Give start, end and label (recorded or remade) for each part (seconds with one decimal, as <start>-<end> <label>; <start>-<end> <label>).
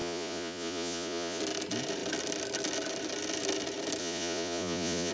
0.0-1.4 remade; 1.4-4.0 recorded; 4.0-5.1 remade